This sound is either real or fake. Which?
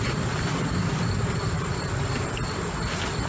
real